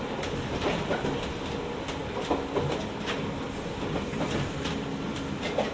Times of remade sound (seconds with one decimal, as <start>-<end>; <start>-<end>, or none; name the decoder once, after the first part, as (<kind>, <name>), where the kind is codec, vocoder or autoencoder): none